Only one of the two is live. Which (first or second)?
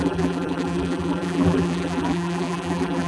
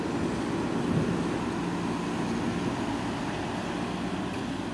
second